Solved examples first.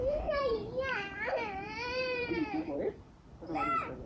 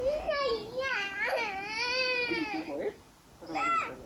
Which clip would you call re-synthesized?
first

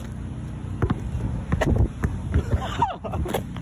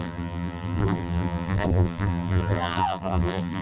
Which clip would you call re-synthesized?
second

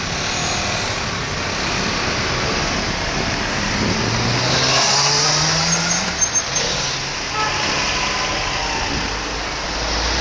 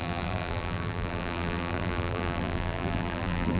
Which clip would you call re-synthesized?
second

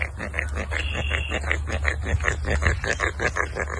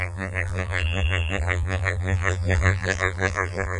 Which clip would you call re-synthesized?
second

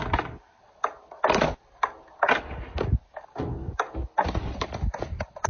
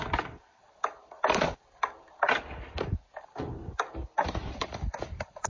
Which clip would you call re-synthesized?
second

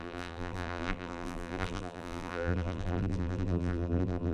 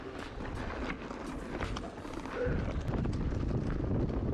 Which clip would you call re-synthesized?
first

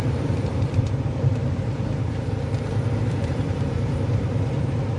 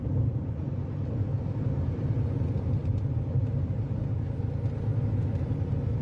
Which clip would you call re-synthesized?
first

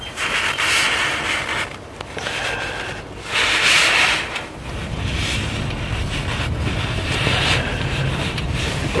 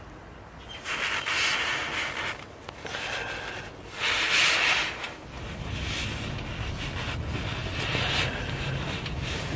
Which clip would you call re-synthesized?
first